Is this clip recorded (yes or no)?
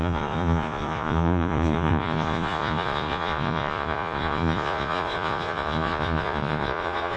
no